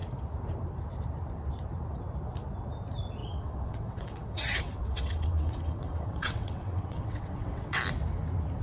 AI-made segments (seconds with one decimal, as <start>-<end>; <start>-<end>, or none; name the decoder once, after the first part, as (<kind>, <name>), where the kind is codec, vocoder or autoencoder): 3.2-7.8 (vocoder, WaveNeXt)